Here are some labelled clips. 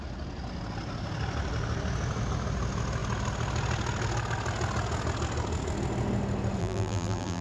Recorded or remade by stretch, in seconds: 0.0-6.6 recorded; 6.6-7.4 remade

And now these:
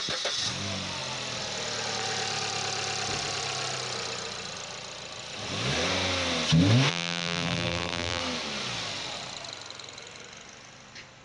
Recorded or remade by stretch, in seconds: 0.0-6.9 recorded; 6.9-8.2 remade; 8.2-11.2 recorded

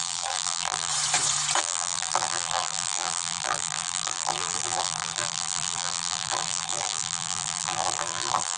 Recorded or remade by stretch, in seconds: 0.0-0.9 remade; 0.9-1.6 recorded; 1.6-8.6 remade

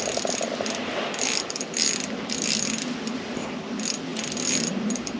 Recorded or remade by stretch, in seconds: 0.0-5.2 remade